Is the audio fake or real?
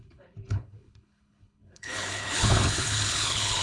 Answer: fake